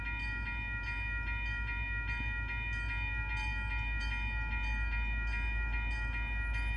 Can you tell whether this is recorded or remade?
recorded